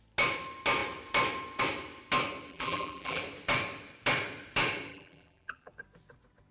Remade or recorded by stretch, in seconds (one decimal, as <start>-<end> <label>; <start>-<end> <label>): 0.0-2.5 recorded; 2.5-3.2 remade; 3.2-4.9 recorded; 4.9-5.7 remade; 5.7-6.5 recorded